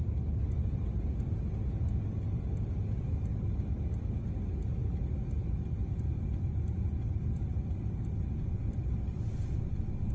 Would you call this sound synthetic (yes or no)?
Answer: no